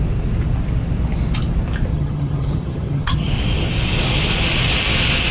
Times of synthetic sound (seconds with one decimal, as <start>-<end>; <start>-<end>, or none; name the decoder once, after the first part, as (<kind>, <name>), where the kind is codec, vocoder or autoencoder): 1.9-3.3 (vocoder, HiFi-GAN)